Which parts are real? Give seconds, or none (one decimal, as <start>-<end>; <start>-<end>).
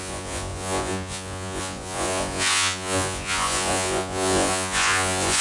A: none